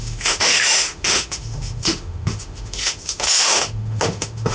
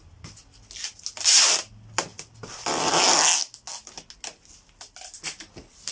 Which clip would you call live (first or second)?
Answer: second